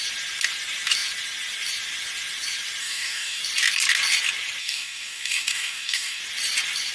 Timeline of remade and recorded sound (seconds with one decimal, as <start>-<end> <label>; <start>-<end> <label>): 0.0-2.8 recorded; 2.8-3.4 remade; 3.4-4.6 recorded; 4.6-6.2 remade; 6.2-6.9 recorded